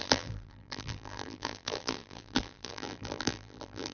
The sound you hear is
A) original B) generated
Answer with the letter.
B